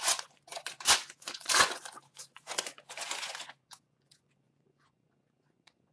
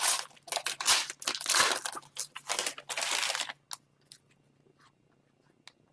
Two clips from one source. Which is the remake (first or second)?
first